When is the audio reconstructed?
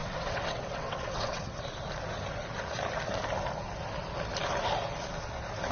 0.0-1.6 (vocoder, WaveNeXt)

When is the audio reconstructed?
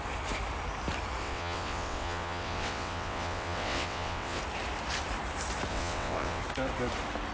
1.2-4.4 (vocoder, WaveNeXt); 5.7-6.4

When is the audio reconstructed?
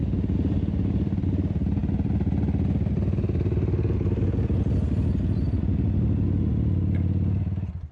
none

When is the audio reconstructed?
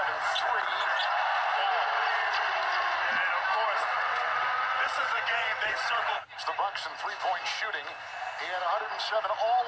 3.8-6.2 (vocoder, WaveNeXt)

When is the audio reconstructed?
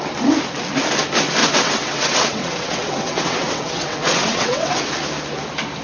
1.4-4.9 (vocoder, WaveNeXt)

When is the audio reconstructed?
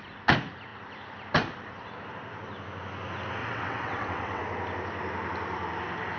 3.4-4.4 (vocoder, WaveNeXt)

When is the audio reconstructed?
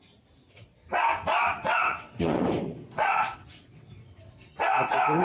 1.6-4.5 (vocoder, WaveNeXt)